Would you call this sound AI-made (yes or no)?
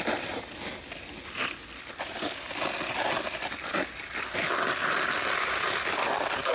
no